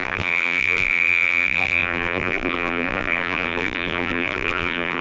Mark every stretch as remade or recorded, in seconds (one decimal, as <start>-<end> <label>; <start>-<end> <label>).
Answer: 0.0-5.0 remade